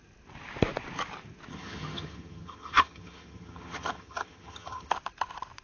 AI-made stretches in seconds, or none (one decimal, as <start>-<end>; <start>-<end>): 1.5-4.9